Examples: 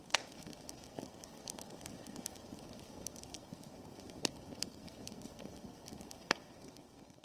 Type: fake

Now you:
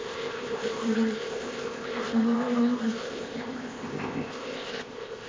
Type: fake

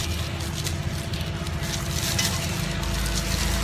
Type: real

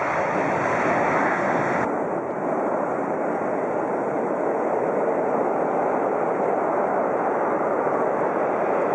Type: real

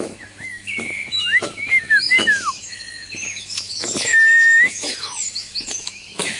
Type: fake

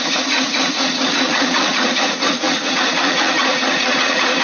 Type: fake